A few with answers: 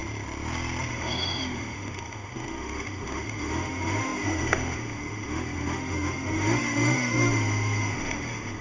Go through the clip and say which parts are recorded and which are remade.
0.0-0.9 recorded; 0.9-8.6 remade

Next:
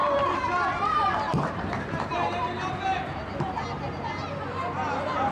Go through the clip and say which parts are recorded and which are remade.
0.0-3.2 remade; 3.2-5.3 recorded

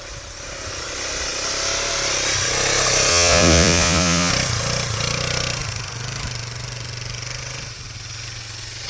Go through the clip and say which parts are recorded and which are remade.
0.0-3.1 recorded; 3.1-4.3 remade; 4.3-8.9 recorded

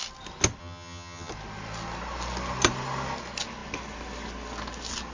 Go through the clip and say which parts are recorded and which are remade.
0.0-0.6 recorded; 0.6-1.3 remade; 1.3-5.1 recorded

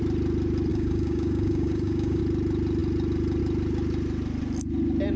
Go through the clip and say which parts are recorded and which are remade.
0.0-0.7 recorded; 0.7-2.2 remade; 2.2-5.2 recorded